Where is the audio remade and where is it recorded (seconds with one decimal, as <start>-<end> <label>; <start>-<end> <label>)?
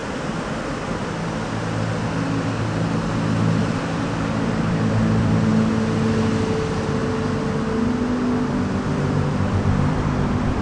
0.0-3.6 recorded; 3.6-5.5 remade; 5.5-6.1 recorded; 6.1-7.0 remade; 7.0-8.5 recorded; 8.5-10.6 remade